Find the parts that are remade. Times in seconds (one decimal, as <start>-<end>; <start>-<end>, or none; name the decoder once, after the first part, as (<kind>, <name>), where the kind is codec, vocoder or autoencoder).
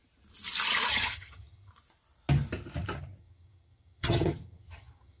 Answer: 0.9-1.7 (vocoder, HiFi-GAN); 3.2-5.2